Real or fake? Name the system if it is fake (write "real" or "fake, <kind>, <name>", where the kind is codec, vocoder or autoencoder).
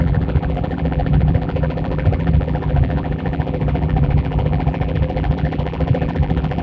fake, vocoder, BigVGAN v2